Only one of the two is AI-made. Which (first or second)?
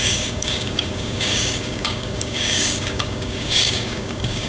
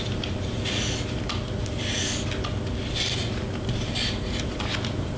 first